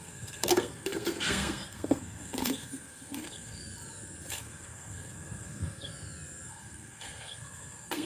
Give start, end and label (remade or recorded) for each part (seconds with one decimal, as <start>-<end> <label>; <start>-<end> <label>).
0.0-3.6 remade; 3.6-4.3 recorded; 4.3-5.9 remade; 5.9-6.5 recorded; 6.5-8.1 remade